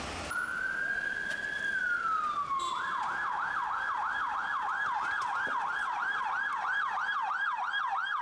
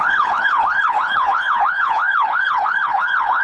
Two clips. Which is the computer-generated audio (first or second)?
second